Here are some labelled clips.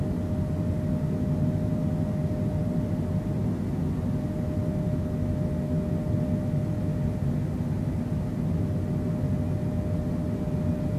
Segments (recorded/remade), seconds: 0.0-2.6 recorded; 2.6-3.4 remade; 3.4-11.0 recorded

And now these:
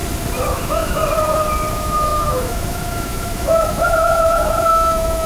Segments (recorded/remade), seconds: 0.0-0.5 recorded; 0.5-1.0 remade; 1.0-1.7 recorded; 1.7-5.3 remade

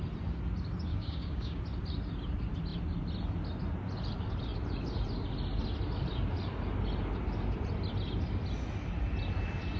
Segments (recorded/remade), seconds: 0.0-0.9 recorded; 0.9-1.6 remade; 1.6-9.8 recorded

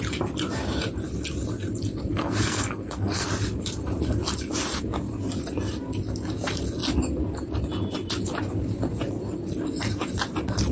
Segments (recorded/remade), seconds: 0.0-2.1 recorded; 2.1-3.3 remade; 3.3-10.7 recorded

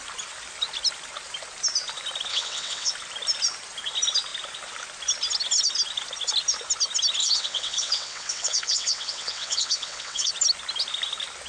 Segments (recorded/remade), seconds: 0.0-2.3 recorded; 2.3-2.9 remade; 2.9-7.2 recorded; 7.2-10.3 remade; 10.3-11.5 recorded